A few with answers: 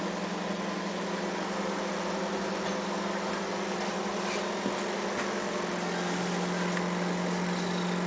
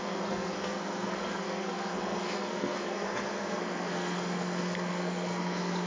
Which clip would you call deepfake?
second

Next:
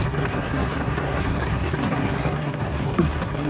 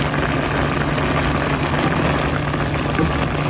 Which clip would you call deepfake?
first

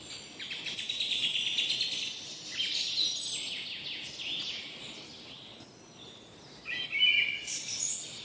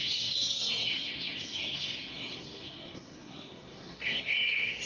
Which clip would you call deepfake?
second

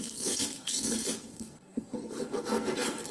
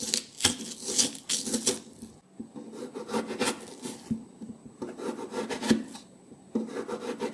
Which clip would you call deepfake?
first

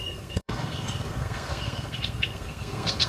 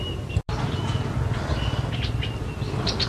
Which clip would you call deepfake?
first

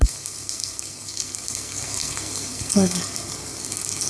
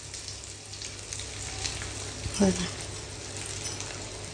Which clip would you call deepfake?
first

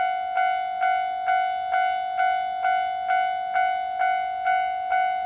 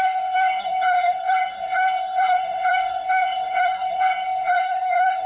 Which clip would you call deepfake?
second